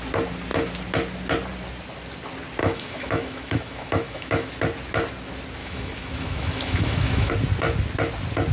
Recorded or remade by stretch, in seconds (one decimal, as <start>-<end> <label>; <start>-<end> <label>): 0.0-2.6 recorded; 2.6-4.5 remade; 4.5-5.6 recorded; 5.6-7.3 remade; 7.3-8.5 recorded